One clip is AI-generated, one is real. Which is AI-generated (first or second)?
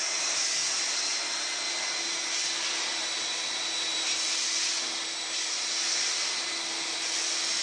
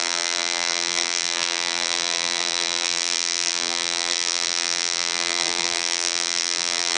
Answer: second